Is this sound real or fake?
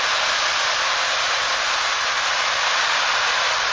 real